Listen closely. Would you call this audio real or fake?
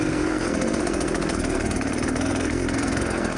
fake